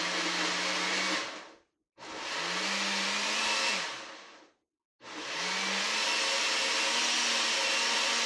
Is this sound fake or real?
real